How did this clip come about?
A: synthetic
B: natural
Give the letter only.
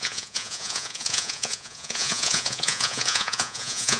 A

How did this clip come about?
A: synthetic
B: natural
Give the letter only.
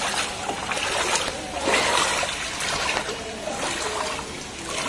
B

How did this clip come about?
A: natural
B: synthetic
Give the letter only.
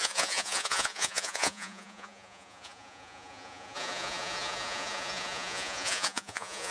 B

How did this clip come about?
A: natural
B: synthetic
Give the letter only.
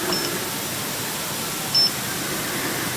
A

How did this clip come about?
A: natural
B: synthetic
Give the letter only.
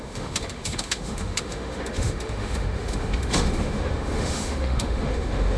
B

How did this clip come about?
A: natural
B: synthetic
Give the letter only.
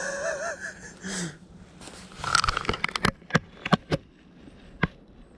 A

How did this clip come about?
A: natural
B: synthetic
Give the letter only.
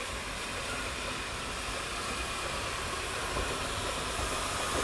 A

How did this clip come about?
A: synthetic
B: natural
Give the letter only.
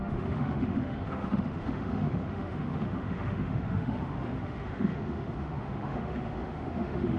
A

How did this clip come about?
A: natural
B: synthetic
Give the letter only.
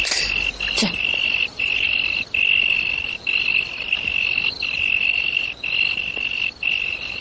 A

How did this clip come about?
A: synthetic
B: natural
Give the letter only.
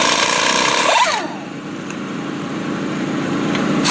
A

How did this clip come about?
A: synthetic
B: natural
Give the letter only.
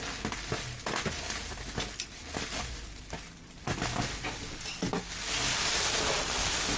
B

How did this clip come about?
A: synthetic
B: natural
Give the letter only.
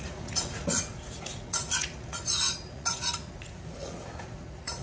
A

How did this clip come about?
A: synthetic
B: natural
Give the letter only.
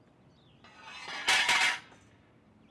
B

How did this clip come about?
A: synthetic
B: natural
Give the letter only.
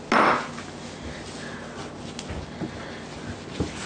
B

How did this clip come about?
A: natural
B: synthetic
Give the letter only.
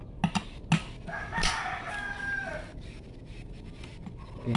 A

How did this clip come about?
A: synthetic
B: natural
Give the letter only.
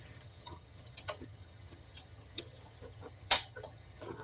A